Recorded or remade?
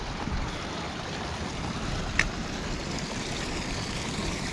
recorded